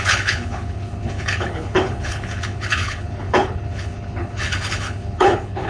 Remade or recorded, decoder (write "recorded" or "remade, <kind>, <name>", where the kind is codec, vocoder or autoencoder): remade, codec, HILCodec